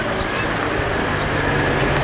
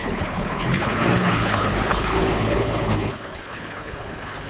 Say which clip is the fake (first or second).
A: second